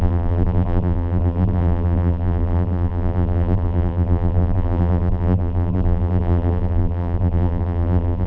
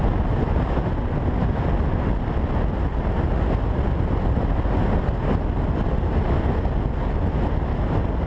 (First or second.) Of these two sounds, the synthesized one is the first